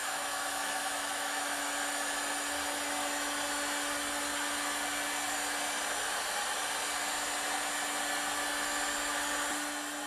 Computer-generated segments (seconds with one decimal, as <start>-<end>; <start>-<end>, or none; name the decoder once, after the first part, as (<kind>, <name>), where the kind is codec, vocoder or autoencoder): 0.0-1.6 (autoencoder, DAC-VAE)